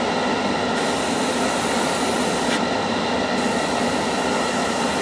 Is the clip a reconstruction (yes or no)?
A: no